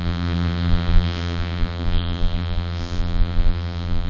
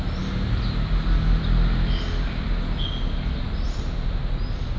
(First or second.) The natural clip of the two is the second